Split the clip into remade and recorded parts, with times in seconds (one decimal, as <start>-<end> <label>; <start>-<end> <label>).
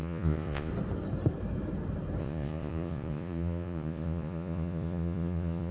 0.0-0.7 remade; 0.7-2.2 recorded; 2.2-5.7 remade